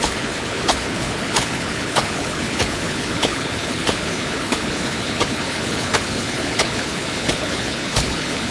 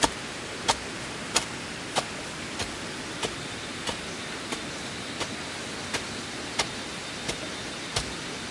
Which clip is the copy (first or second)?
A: first